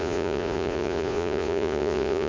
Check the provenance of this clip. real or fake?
fake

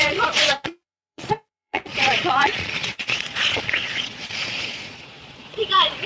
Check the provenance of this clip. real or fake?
fake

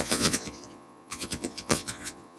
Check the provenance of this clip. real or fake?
fake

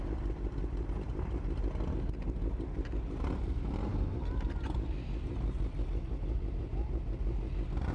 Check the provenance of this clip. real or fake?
real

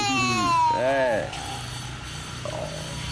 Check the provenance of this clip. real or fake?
real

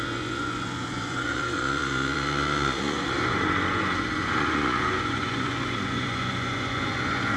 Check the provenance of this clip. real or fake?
fake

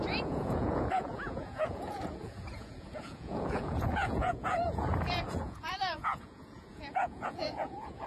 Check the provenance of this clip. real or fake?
fake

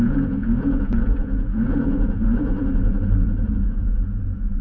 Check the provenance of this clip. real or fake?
fake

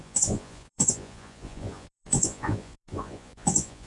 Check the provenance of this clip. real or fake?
fake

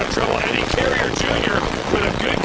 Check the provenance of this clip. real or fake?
fake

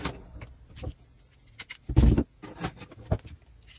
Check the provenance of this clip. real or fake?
real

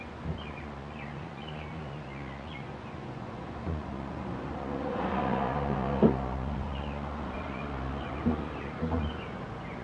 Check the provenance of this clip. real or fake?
fake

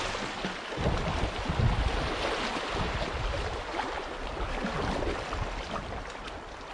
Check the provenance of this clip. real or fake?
real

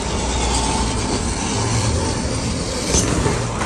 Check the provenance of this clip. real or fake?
real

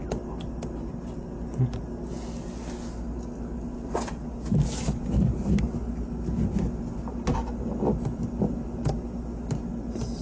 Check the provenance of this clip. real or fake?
real